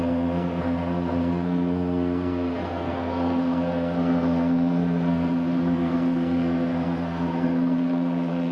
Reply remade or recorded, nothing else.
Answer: remade